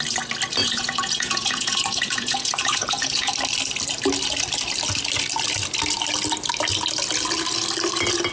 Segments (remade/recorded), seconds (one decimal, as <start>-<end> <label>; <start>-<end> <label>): 0.0-0.6 recorded; 0.6-3.3 remade; 3.3-8.3 recorded